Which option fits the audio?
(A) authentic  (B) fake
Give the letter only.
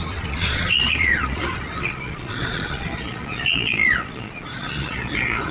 B